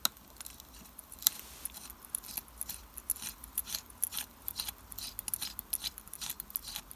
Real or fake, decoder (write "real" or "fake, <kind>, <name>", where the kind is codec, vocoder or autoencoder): real